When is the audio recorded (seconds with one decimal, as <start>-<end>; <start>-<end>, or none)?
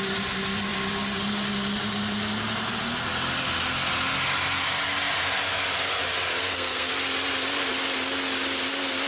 0.0-6.4; 6.9-9.1